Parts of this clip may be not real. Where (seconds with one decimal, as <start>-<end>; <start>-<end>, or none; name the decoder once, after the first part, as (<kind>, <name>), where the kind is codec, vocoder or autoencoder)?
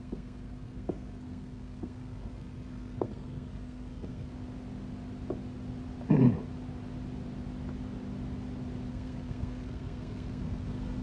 0.0-4.3 (codec, SNAC); 8.9-11.0